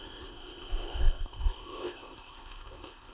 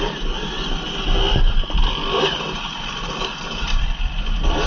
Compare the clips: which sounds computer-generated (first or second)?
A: first